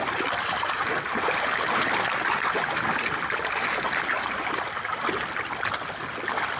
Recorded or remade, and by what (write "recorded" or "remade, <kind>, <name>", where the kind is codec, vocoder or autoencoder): recorded